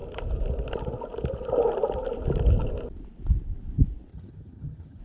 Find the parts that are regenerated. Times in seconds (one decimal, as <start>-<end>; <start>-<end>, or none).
4.1-5.0